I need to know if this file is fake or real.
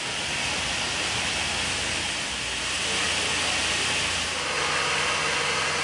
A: real